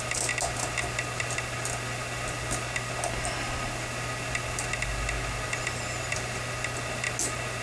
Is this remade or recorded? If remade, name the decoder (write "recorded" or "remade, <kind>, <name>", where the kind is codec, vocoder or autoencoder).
recorded